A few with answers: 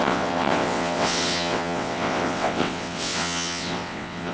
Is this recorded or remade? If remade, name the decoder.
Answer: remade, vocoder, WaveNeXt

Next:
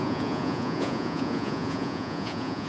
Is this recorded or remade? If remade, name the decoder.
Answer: remade, vocoder, Vocos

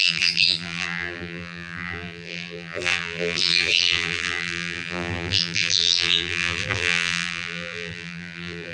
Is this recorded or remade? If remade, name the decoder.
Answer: remade, vocoder, BigVGAN v2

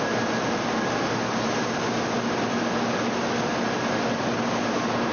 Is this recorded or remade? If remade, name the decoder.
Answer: recorded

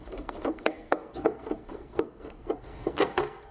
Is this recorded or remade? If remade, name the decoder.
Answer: remade, codec, SNAC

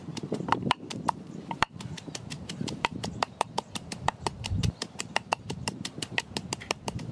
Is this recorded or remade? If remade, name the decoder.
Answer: remade, vocoder, BigVGAN v2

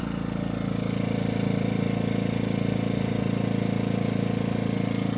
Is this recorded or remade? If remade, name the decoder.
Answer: recorded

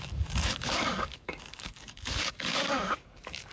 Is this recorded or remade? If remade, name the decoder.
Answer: remade, codec, DAC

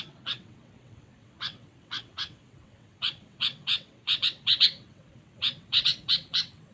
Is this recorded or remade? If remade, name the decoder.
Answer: remade, vocoder, WaveNeXt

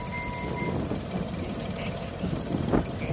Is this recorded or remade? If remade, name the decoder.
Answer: recorded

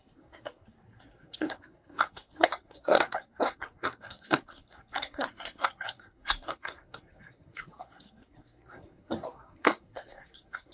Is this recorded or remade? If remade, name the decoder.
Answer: remade, codec, SNAC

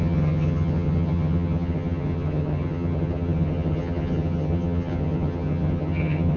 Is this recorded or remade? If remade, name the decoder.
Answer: remade, vocoder, HiFi-GAN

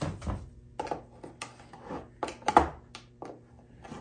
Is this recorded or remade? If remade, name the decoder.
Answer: recorded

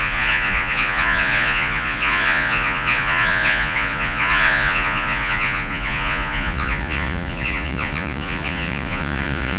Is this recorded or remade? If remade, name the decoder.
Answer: remade, vocoder, Vocos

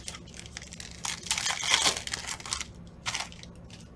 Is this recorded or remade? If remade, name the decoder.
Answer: recorded